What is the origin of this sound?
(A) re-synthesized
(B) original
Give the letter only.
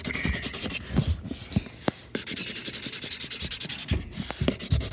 B